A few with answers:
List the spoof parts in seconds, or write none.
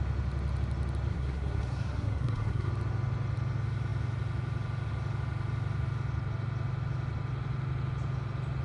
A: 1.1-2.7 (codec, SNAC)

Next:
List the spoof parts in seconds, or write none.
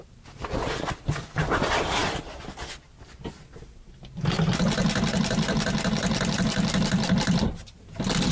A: none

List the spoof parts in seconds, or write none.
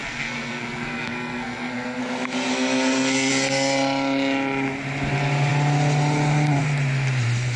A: 0.0-2.0 (codec, SNAC); 2.5-3.3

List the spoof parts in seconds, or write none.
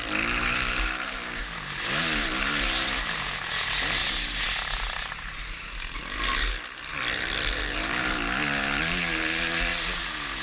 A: none